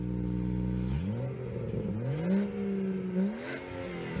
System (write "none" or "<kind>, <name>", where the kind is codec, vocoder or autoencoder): none